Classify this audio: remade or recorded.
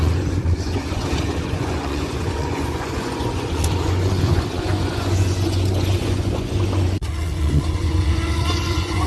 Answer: remade